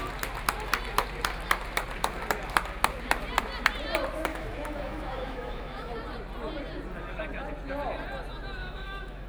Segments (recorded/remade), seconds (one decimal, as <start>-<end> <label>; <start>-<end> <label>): 0.0-4.3 recorded; 4.3-5.9 remade; 5.9-8.6 recorded; 8.6-9.3 remade